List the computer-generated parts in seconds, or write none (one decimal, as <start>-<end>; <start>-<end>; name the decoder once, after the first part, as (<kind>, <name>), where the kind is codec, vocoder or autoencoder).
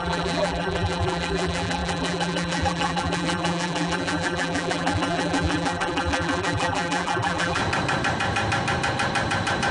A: 0.0-7.6 (vocoder, BigVGAN v2)